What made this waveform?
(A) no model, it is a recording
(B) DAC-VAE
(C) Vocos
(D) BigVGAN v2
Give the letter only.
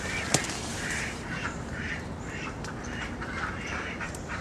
D